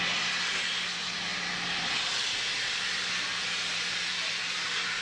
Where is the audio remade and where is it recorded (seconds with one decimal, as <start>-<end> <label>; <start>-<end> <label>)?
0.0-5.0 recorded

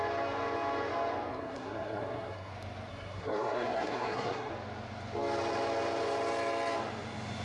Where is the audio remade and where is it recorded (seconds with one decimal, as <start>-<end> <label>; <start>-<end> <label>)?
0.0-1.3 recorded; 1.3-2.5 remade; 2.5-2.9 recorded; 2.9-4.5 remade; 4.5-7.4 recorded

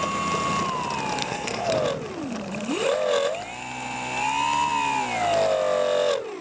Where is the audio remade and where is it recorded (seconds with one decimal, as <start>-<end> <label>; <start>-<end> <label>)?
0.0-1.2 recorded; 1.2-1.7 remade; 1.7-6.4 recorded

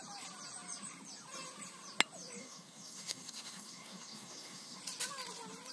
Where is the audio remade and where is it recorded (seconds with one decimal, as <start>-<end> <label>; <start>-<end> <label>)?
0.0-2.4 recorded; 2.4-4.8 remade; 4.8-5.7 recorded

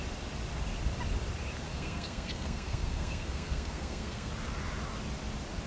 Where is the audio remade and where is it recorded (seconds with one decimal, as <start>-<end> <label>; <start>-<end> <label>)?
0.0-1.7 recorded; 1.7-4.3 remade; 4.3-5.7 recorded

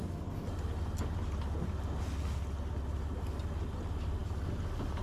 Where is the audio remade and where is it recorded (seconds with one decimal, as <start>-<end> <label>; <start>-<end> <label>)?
0.0-5.0 recorded

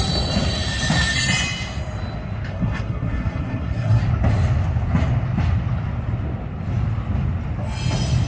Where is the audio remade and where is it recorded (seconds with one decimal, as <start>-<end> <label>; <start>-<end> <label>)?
0.0-2.5 recorded; 2.5-4.0 remade; 4.0-8.3 recorded